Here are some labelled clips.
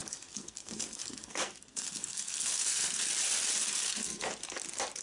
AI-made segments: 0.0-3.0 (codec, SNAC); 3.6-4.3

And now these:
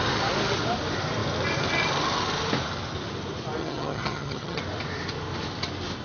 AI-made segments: 3.6-4.6 (vocoder, HiFi-GAN)

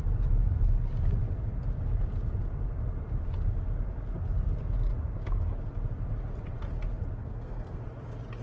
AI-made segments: 7.2-7.8 (codec, SNAC)

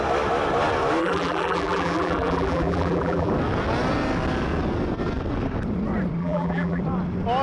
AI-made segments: 1.0-3.3 (vocoder, BigVGAN v2); 6.2-6.8

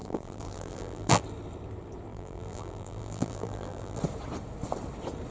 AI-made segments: 0.0-1.2 (vocoder, BigVGAN v2); 2.1-4.0

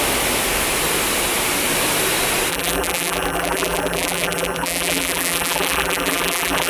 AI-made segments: 2.5-6.7 (vocoder, BigVGAN v2)